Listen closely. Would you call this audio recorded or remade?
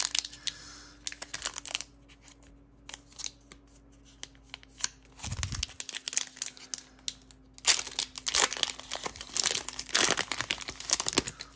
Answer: recorded